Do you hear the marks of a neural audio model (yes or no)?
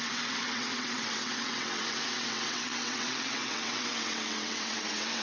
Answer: yes